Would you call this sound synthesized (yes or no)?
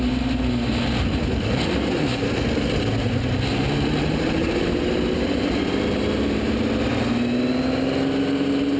no